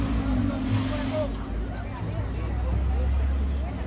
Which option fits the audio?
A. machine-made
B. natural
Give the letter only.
B